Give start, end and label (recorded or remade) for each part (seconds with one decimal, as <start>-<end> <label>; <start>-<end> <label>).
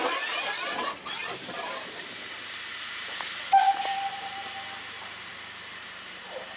0.0-6.6 recorded